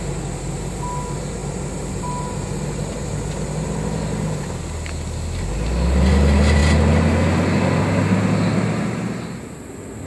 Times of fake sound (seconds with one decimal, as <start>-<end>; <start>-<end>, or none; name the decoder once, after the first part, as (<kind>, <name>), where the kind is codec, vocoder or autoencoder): none